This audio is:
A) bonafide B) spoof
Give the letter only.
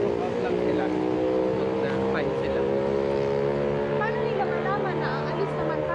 A